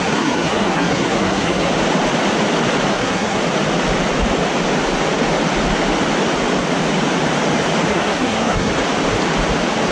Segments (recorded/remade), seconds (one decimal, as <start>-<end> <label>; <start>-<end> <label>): 0.0-1.7 remade; 1.7-2.9 recorded; 2.9-3.4 remade; 3.4-7.9 recorded; 7.9-8.7 remade; 8.7-9.9 recorded